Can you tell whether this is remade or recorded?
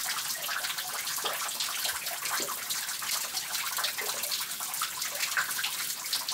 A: recorded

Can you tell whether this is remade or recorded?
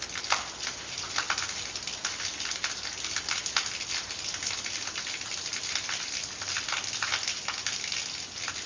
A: recorded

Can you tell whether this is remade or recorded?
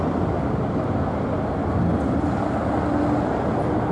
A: recorded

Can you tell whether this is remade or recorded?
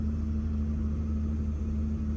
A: recorded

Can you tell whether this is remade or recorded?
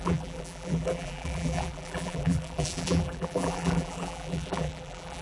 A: remade